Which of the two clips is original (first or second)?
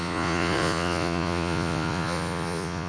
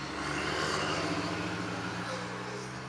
second